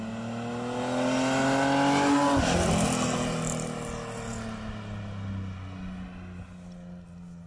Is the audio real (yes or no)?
yes